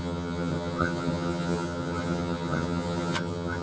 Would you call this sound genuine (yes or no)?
no